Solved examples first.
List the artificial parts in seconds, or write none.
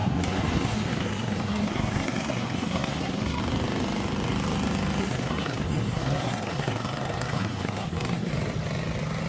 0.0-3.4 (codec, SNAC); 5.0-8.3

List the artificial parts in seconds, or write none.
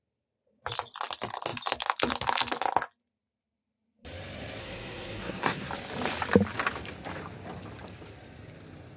4.6-5.7 (codec, SNAC)